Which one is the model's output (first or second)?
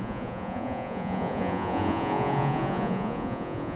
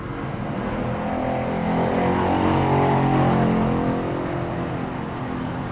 first